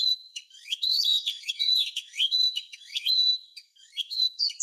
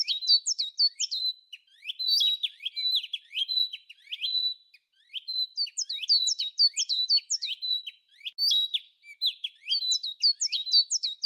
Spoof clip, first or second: first